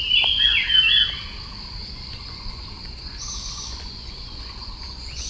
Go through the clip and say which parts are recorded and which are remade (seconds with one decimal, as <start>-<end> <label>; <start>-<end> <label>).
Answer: 0.0-1.8 recorded; 1.8-5.3 remade